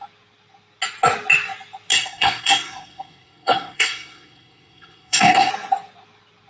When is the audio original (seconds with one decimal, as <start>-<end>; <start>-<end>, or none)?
0.0-1.9; 5.5-6.5

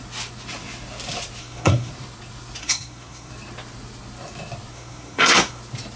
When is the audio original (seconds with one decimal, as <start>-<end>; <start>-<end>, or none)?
0.0-1.4; 1.9-2.6; 3.3-4.7; 5.6-6.0

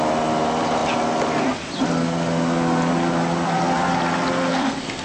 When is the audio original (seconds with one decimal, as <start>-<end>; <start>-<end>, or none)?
0.0-4.5